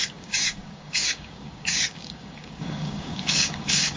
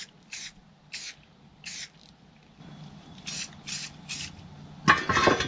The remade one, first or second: first